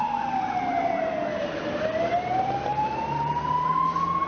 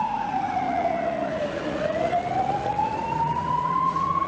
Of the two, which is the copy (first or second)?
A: second